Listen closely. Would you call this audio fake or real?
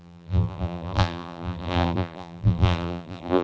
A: fake